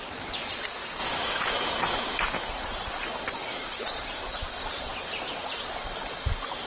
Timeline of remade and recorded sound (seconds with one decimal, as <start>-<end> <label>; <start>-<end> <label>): 0.0-1.0 recorded; 1.0-2.2 remade; 2.2-6.7 recorded